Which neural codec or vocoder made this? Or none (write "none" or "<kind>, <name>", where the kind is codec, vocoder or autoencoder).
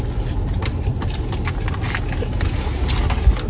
none